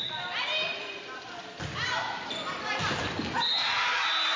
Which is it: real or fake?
real